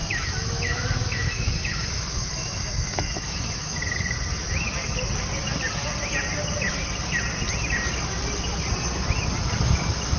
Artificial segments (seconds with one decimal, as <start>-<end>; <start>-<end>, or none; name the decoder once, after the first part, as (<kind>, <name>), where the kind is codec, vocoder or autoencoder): 0.0-3.8 (autoencoder, DAC-VAE)